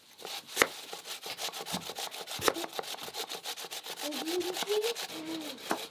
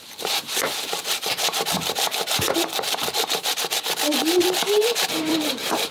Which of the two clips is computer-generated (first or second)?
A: second